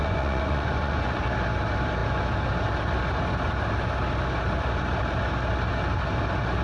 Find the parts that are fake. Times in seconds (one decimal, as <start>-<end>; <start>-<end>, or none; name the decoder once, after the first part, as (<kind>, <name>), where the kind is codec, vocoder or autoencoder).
0.0-1.2 (vocoder, Vocos)